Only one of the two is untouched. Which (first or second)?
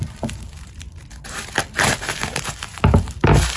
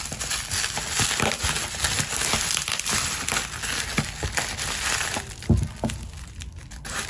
second